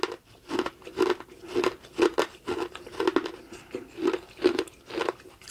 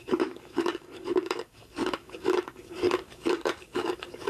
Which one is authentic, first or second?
first